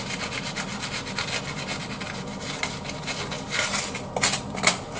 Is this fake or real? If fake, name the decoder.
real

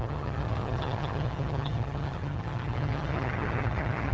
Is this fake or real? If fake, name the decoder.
fake, vocoder, HiFi-GAN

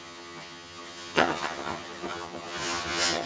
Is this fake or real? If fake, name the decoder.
fake, vocoder, HiFi-GAN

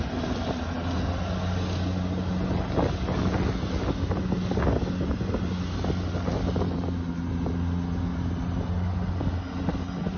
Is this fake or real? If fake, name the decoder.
real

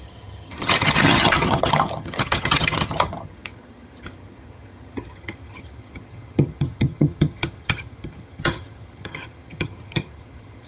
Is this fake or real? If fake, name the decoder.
fake, vocoder, HiFi-GAN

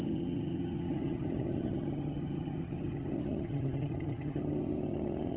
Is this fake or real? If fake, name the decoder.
fake, vocoder, HiFi-GAN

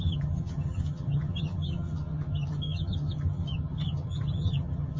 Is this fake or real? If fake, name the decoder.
fake, vocoder, HiFi-GAN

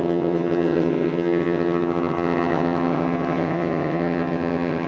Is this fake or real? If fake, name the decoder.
fake, vocoder, HiFi-GAN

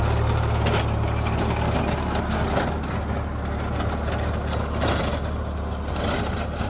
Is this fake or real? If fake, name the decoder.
real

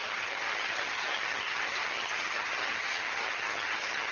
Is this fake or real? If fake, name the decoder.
fake, vocoder, HiFi-GAN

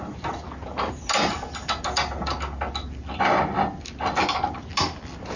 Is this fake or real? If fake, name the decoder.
real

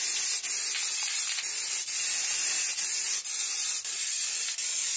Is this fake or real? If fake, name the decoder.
real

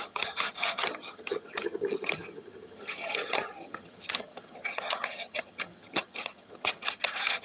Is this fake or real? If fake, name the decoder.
fake, vocoder, HiFi-GAN